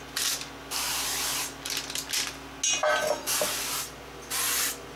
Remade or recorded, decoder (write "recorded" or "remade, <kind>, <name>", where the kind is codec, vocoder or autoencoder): recorded